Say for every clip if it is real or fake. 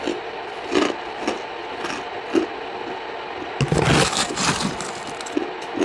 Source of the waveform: real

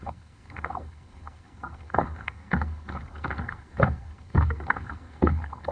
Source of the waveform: fake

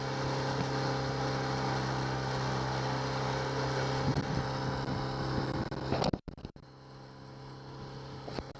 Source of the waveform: real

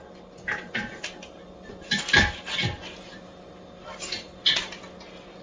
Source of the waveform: real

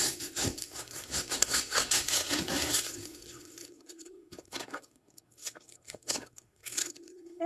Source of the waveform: fake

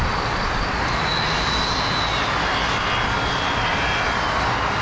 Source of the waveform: real